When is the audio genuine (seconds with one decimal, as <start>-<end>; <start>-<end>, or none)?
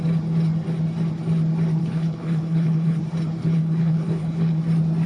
0.0-1.8; 3.0-3.4; 4.6-5.1